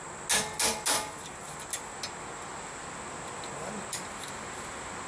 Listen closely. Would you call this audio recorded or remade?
recorded